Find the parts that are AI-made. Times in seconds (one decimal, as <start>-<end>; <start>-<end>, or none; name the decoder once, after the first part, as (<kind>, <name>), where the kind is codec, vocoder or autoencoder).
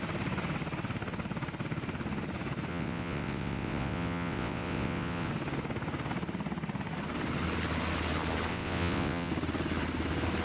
2.7-5.3 (vocoder, WaveNeXt); 8.5-9.3